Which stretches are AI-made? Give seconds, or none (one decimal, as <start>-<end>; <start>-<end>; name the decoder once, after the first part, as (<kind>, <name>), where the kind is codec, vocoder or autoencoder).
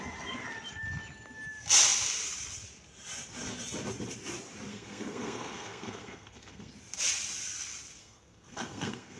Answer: 4.7-6.7 (codec, SNAC); 8.0-9.2